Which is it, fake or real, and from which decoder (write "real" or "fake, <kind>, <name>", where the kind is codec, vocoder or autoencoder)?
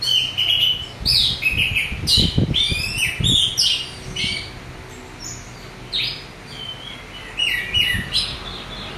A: real